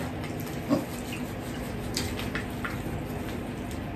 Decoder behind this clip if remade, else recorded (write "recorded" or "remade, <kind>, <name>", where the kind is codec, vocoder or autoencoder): recorded